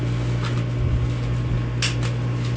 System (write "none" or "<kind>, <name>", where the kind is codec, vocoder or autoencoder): none